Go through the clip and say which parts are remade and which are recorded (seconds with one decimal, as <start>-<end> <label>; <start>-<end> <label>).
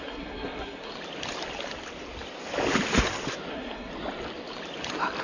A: 0.0-0.9 remade; 0.9-3.5 recorded; 3.5-3.9 remade; 3.9-5.2 recorded